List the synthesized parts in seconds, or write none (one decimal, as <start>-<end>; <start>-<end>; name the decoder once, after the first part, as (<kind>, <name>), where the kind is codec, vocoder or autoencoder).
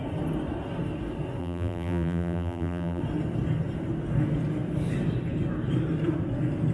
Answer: 1.4-3.0 (vocoder, BigVGAN v2)